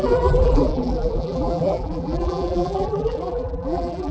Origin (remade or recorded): remade